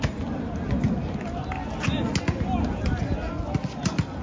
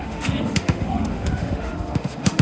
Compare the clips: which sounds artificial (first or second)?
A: second